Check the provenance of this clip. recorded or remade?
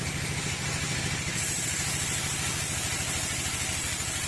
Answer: recorded